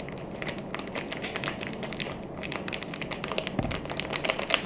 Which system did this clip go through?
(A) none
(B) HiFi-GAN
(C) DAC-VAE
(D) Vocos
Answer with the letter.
A